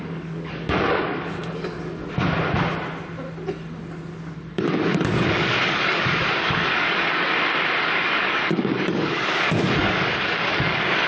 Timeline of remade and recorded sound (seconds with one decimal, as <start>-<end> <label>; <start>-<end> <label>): 0.0-2.0 remade; 2.0-4.5 recorded; 4.5-7.3 remade; 7.3-7.8 recorded; 7.8-11.1 remade